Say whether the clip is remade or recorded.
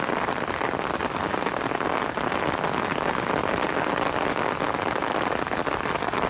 recorded